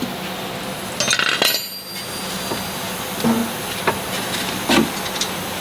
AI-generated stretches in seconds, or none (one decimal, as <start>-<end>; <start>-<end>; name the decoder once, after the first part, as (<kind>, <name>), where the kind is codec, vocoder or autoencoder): none